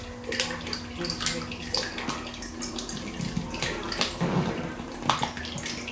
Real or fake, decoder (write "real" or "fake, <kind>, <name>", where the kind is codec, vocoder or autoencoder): real